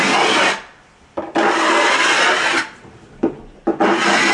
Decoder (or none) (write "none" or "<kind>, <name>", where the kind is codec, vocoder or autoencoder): none